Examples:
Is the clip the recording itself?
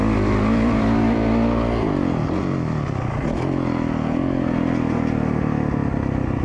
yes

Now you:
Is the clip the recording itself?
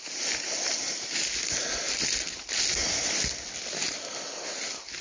yes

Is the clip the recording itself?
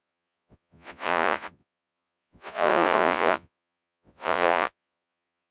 no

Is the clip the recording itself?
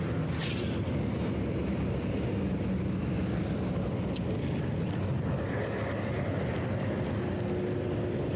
yes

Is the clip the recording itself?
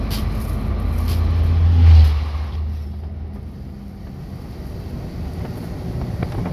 yes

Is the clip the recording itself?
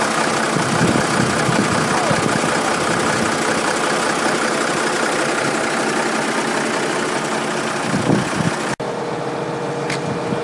yes